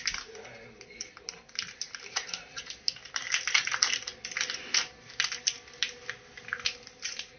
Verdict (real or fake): real